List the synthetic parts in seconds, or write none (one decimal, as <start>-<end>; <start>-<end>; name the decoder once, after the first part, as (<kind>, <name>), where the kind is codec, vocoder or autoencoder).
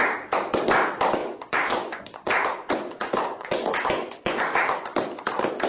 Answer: 1.2-4.4 (vocoder, Vocos)